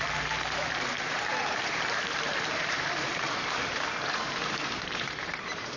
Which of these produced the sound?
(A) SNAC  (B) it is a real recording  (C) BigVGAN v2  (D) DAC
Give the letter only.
C